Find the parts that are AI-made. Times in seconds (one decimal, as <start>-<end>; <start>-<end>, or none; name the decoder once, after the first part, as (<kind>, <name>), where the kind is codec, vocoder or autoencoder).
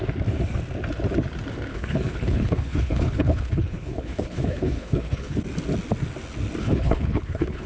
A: 1.7-5.4 (codec, HILCodec); 6.6-7.7